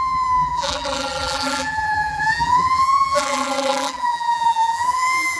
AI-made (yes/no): yes